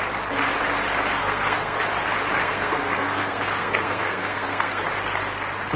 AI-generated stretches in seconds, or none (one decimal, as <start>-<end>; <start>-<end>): 1.2-1.8; 2.4-4.8